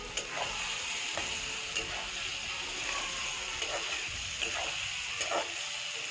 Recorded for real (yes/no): yes